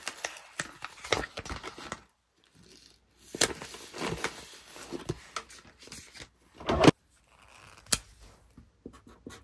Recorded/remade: recorded